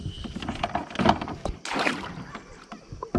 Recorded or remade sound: recorded